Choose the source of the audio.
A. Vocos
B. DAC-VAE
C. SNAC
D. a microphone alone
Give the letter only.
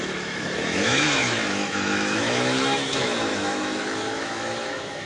B